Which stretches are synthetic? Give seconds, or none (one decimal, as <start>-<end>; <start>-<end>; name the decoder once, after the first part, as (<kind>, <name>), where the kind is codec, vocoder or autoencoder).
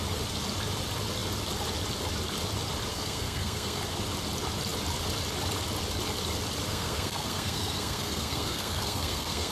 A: 2.9-3.8 (codec, SNAC); 6.7-9.5